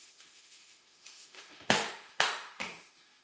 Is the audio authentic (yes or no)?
no